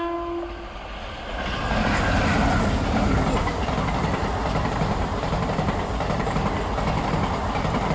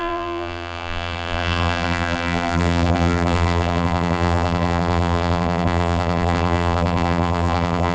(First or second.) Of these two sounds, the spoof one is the second